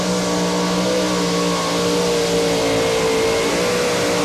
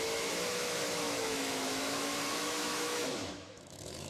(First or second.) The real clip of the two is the first